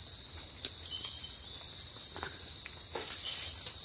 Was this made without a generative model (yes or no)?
yes